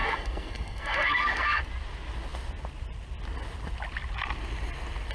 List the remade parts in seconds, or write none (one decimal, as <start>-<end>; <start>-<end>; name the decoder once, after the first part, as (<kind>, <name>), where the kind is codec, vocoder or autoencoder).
0.0-1.6 (codec, SNAC)

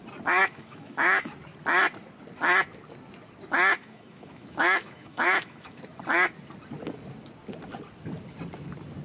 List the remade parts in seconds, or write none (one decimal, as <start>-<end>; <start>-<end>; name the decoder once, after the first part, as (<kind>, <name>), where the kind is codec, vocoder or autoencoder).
0.4-1.3 (autoencoder, DAC-VAE); 3.7-5.8

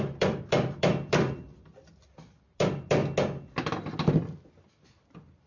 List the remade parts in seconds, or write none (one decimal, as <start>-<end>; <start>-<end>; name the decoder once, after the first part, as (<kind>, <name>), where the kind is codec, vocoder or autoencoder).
0.0-3.0 (vocoder, BigVGAN v2); 4.6-5.5

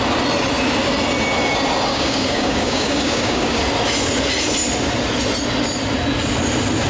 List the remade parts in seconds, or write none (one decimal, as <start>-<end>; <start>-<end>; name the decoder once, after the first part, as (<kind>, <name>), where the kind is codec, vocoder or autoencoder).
1.9-3.6 (codec, DAC)

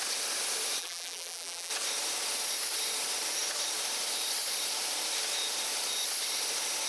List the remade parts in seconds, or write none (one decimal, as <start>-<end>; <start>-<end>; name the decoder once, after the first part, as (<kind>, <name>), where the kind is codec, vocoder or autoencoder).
0.8-1.7 (vocoder, BigVGAN v2)

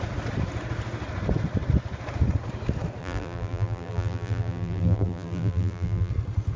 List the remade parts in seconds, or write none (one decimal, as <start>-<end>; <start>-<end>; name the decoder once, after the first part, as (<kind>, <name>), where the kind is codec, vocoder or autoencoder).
3.0-6.1 (vocoder, BigVGAN v2)

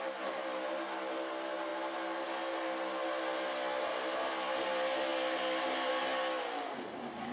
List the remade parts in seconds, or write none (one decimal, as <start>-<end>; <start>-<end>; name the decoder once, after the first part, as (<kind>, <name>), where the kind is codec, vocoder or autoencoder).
none

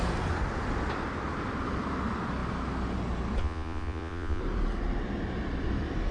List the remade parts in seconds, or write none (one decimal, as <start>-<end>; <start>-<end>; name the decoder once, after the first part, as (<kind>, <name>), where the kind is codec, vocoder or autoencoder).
3.4-4.4 (vocoder, Vocos)